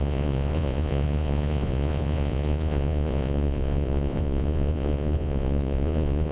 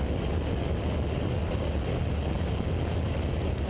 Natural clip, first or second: second